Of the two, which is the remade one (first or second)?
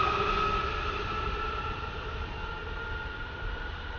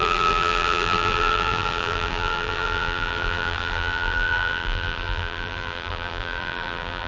second